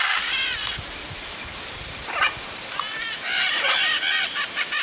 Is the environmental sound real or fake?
real